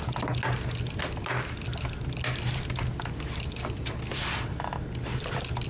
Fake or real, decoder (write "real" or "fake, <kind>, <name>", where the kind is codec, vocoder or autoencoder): real